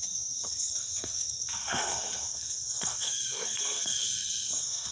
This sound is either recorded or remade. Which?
remade